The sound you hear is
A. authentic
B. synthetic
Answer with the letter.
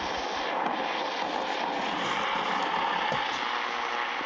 A